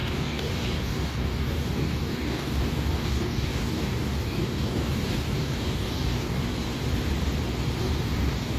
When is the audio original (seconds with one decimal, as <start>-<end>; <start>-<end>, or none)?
6.4-7.8